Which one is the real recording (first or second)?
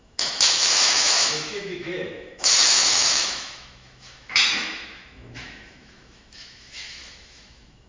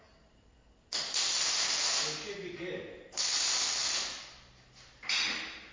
second